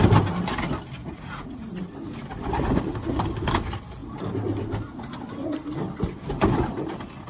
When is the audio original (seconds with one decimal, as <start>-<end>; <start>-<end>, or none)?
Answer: 0.0-1.0; 1.8-7.3

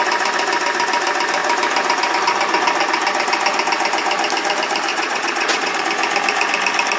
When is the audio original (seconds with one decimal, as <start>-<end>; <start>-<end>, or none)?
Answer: 0.0-4.9; 5.8-7.0

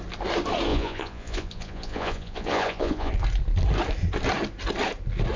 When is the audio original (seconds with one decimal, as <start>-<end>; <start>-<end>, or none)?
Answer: 0.0-0.7; 3.1-5.4

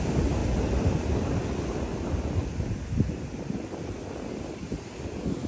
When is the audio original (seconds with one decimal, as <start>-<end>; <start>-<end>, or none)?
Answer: 0.0-5.5

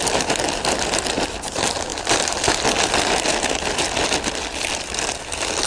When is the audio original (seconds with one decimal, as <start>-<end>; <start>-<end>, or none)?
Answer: 0.0-5.7

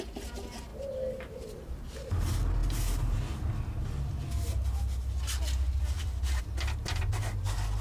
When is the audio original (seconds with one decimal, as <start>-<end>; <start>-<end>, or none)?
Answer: 0.0-7.8

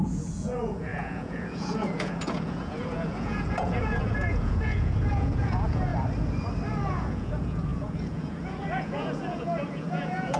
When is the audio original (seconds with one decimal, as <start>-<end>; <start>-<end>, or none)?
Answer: 5.9-6.9

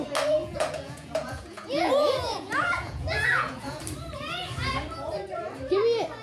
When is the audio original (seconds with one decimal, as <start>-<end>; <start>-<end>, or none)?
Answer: 0.0-0.4; 3.8-6.2